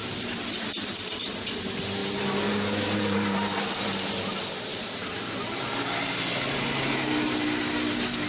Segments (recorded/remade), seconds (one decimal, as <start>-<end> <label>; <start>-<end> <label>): 0.0-1.6 remade; 1.6-2.0 recorded; 2.0-4.1 remade; 4.1-8.3 recorded